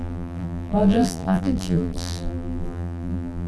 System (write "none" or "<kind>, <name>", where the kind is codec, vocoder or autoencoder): vocoder, BigVGAN v2